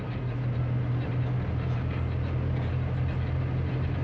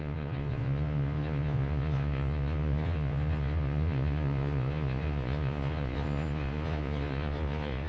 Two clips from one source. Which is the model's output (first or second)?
second